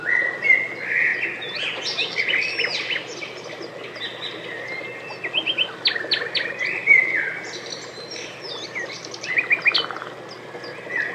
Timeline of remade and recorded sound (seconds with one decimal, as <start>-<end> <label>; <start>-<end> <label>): 0.0-6.8 recorded; 6.8-9.4 remade; 9.4-11.1 recorded